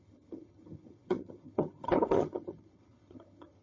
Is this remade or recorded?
remade